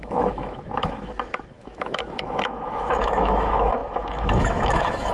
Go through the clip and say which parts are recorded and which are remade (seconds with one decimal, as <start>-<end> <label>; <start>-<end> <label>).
0.0-5.1 remade